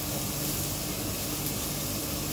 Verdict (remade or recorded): recorded